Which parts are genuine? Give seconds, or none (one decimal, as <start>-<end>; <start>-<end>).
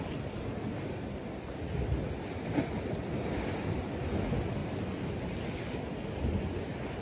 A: 0.0-7.0